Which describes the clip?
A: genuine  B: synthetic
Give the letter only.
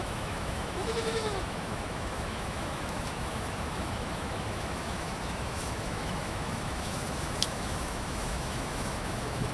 B